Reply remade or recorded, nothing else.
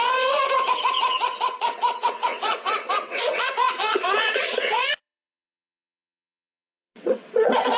remade